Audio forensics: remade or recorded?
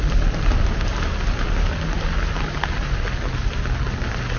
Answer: recorded